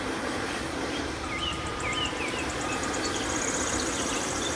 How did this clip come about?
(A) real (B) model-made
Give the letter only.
B